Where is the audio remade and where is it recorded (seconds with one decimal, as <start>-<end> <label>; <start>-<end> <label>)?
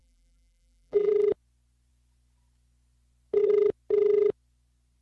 0.0-1.1 remade; 1.1-5.0 recorded